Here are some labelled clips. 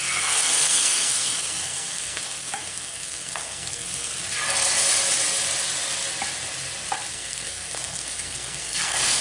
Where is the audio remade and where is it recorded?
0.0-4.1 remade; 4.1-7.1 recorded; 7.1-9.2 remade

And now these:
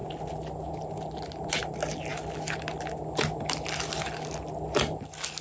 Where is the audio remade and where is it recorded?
0.0-5.4 recorded

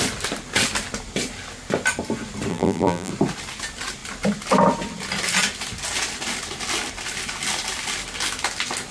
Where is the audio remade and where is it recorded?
0.0-2.5 recorded; 2.5-3.1 remade; 3.1-8.9 recorded

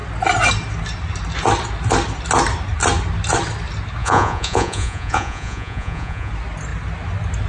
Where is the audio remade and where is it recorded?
0.0-4.0 recorded; 4.0-6.3 remade; 6.3-7.5 recorded

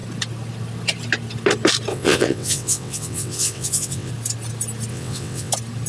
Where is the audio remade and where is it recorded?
0.0-1.9 recorded; 1.9-4.1 remade; 4.1-4.9 recorded; 4.9-5.5 remade; 5.5-5.9 recorded

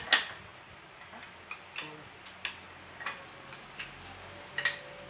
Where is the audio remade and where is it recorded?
0.0-5.1 recorded

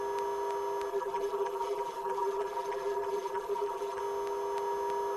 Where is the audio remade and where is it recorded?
0.0-0.9 recorded; 0.9-4.0 remade; 4.0-5.2 recorded